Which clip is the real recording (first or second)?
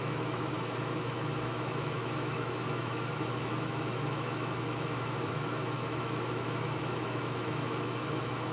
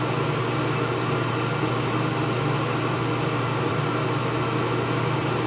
second